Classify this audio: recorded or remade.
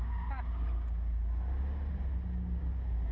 recorded